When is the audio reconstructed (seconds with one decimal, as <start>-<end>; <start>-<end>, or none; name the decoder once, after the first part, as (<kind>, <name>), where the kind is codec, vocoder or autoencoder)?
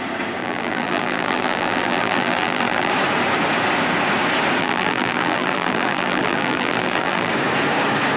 0.4-2.9 (vocoder, BigVGAN v2); 4.6-7.3